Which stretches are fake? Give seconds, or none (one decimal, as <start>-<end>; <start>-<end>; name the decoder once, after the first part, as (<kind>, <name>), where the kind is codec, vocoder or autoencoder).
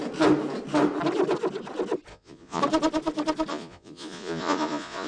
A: 2.1-2.6 (vocoder, Vocos); 3.5-5.1